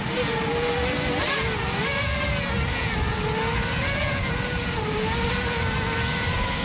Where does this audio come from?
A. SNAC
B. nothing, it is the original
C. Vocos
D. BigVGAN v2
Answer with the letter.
B